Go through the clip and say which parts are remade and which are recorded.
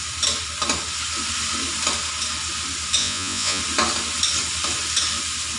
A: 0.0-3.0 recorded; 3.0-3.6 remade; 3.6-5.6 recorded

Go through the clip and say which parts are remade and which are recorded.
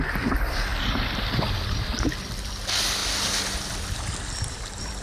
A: 0.0-5.0 recorded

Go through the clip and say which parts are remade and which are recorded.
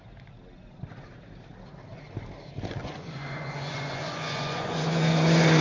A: 0.0-2.8 recorded; 2.8-5.6 remade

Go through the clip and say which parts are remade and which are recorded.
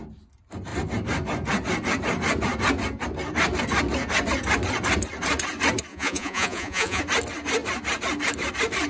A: 0.0-5.9 recorded; 5.9-7.0 remade; 7.0-8.9 recorded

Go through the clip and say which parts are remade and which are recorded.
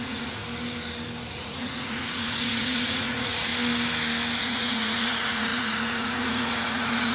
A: 0.0-0.4 remade; 0.4-1.3 recorded; 1.3-3.5 remade; 3.5-4.4 recorded; 4.4-7.1 remade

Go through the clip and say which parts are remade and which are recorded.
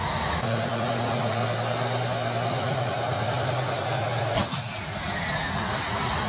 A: 0.0-1.4 remade; 1.4-2.5 recorded; 2.5-6.3 remade